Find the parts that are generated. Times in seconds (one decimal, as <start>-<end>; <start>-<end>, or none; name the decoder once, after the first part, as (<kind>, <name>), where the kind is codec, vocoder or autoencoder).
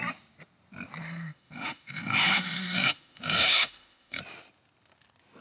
1.0-4.2 (autoencoder, DAC-VAE)